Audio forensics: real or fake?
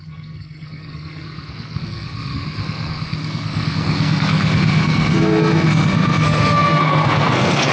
fake